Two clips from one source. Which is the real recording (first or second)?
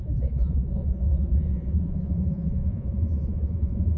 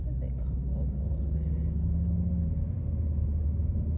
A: second